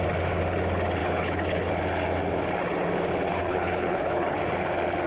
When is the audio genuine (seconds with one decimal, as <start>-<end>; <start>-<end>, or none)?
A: 0.0-1.0; 1.7-3.3; 4.4-5.1